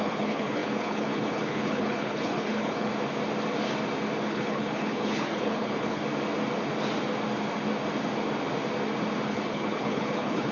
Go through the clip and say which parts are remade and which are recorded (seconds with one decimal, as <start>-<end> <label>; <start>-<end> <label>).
0.0-2.9 remade; 2.9-4.3 recorded; 4.3-6.0 remade; 6.0-9.3 recorded; 9.3-10.5 remade